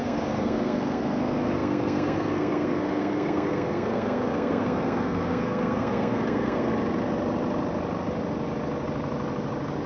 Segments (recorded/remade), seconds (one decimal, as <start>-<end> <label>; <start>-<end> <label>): 0.0-6.7 remade; 6.7-9.9 recorded